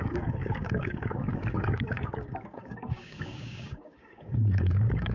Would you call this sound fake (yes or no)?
yes